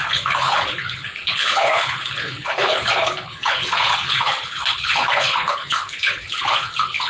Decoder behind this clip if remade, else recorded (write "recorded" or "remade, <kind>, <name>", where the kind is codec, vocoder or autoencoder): remade, codec, HILCodec